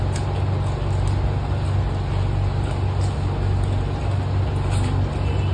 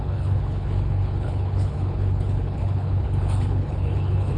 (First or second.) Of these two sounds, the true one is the first